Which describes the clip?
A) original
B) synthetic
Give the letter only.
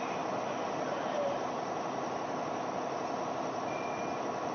A